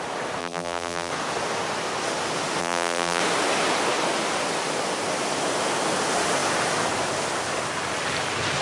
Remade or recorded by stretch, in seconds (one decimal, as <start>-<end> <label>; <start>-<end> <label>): 0.0-0.4 recorded; 0.4-1.1 remade; 1.1-2.6 recorded; 2.6-3.2 remade; 3.2-8.6 recorded